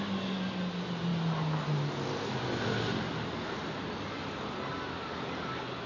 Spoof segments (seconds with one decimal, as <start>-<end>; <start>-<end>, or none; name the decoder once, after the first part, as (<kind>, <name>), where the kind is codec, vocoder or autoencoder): none